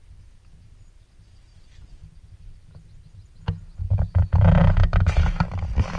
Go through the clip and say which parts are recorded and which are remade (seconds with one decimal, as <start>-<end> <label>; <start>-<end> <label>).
0.0-6.0 recorded